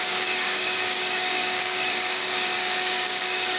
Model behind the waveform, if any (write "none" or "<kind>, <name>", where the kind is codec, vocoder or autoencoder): codec, DAC